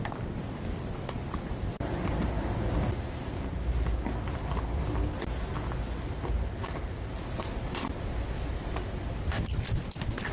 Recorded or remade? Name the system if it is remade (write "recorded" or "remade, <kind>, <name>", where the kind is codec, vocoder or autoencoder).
recorded